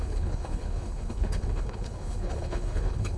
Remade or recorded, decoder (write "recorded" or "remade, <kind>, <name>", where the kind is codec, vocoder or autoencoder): remade, codec, HILCodec